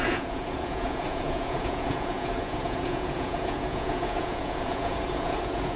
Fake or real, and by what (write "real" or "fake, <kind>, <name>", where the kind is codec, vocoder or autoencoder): fake, vocoder, Vocos